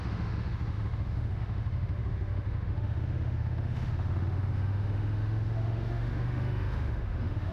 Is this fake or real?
fake